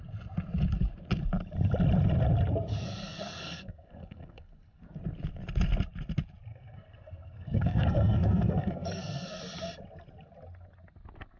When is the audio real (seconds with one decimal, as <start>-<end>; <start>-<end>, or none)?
0.0-2.7; 4.8-6.5; 9.4-11.4